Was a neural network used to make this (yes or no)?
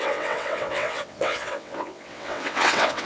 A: yes